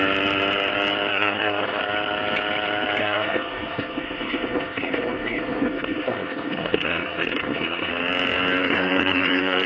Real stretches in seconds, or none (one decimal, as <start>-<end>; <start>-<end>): 0.0-1.1; 1.8-3.0; 7.9-8.6